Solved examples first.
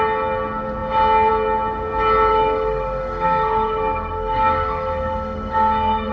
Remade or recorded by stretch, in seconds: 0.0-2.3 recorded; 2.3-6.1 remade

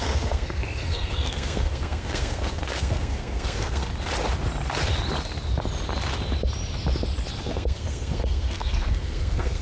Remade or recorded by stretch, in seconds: 0.0-3.9 remade; 3.9-7.4 recorded; 7.4-9.6 remade